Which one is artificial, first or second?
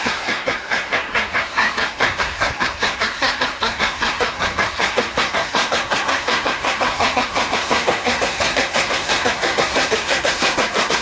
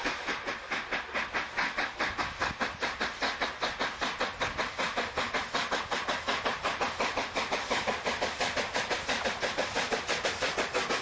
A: first